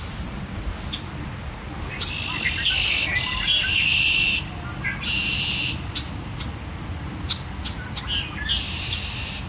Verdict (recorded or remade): recorded